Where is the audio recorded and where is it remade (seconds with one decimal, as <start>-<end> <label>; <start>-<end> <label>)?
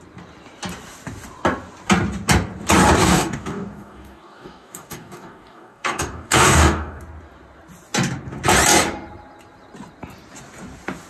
0.0-3.0 recorded; 3.0-7.0 remade; 7.0-11.1 recorded